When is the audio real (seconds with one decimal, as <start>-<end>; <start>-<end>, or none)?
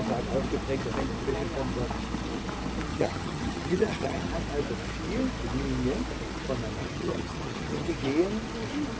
0.0-2.9; 4.3-6.8; 7.9-9.0